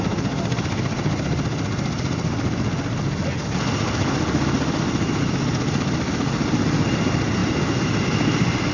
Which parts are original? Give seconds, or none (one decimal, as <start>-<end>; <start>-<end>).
0.0-8.7